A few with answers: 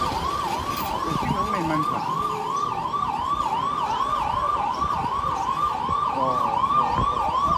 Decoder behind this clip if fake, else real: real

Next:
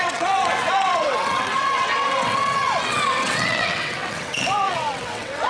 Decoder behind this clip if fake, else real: fake, vocoder, WaveNeXt